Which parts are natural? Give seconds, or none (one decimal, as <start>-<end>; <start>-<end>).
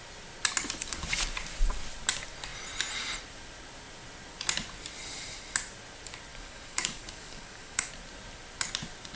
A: 0.0-6.3; 7.9-9.2